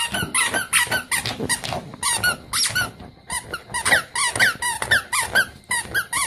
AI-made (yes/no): no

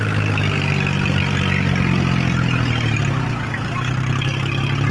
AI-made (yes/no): no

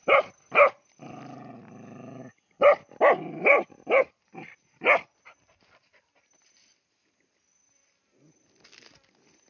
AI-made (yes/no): no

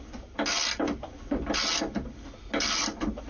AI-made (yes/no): no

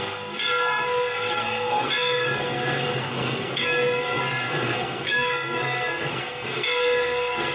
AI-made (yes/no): yes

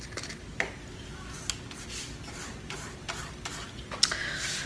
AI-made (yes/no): no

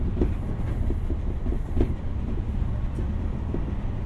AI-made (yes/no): no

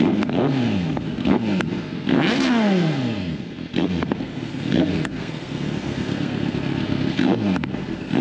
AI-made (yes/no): yes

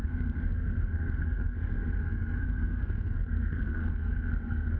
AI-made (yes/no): yes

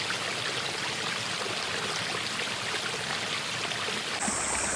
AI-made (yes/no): no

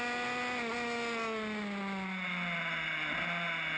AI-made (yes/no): no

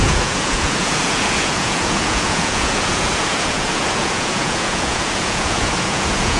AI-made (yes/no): yes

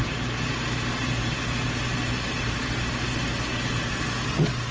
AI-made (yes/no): no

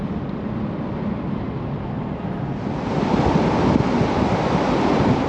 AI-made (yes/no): no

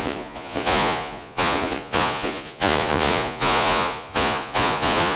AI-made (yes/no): yes